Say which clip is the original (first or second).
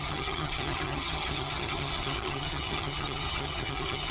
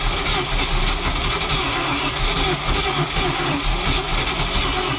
second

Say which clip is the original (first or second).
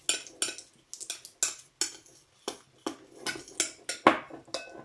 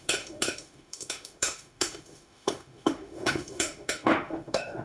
first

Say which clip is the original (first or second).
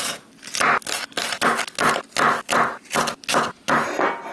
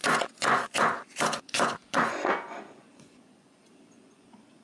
first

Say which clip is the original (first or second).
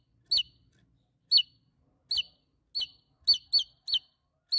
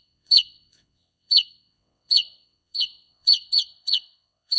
first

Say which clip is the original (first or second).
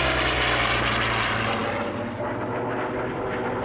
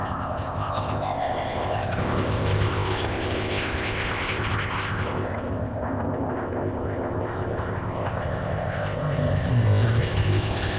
first